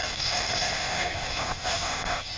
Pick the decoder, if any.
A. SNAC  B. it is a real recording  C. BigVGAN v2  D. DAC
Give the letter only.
D